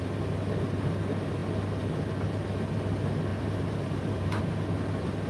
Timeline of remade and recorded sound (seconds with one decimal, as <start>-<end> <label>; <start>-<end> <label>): 0.0-3.3 recorded; 3.3-4.4 remade; 4.4-5.3 recorded